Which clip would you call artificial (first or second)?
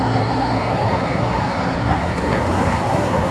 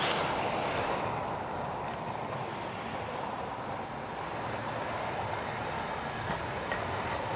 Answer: first